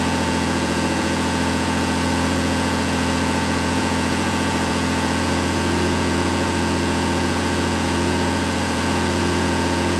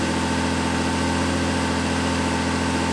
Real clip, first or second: second